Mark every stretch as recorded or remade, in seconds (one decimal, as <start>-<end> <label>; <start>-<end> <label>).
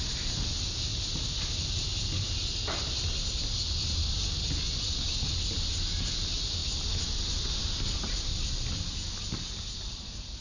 0.0-10.4 recorded